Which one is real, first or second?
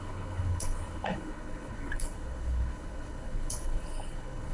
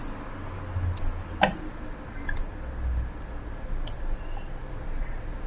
second